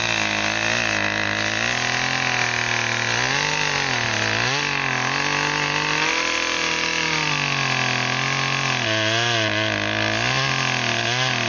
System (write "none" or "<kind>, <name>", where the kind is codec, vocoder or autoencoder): none